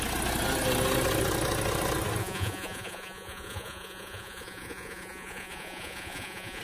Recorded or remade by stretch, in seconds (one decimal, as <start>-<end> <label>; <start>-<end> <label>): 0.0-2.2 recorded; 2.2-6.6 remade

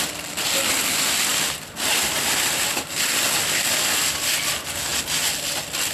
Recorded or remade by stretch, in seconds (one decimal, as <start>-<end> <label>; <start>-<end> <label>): 0.0-1.3 recorded; 1.3-4.0 remade; 4.0-5.9 recorded

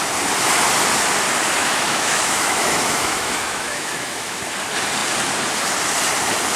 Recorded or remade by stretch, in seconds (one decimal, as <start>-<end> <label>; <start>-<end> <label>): 0.0-1.6 recorded; 1.6-4.4 remade; 4.4-6.6 recorded

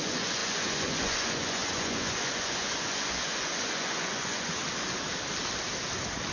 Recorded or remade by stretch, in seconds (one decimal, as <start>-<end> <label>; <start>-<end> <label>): 0.0-4.5 remade; 4.5-6.3 recorded

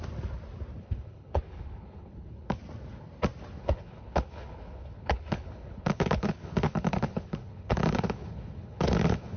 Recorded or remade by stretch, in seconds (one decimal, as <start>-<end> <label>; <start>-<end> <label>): 0.0-0.8 recorded; 0.8-2.6 remade; 2.6-3.6 recorded; 3.6-9.4 remade

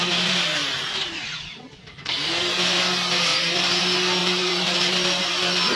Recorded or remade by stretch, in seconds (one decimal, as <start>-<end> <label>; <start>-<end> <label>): 0.0-0.6 recorded; 0.6-2.8 remade; 2.8-3.3 recorded; 3.3-3.8 remade; 3.8-4.2 recorded; 4.2-4.9 remade; 4.9-5.8 recorded

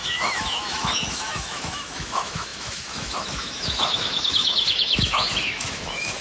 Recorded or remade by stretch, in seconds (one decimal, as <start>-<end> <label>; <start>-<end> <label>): 0.0-6.2 remade

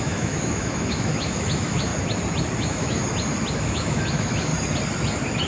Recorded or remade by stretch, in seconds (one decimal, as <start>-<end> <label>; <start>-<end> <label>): 0.0-1.9 remade; 1.9-2.6 recorded; 2.6-3.0 remade; 3.0-3.5 recorded; 3.5-4.5 remade; 4.5-5.5 recorded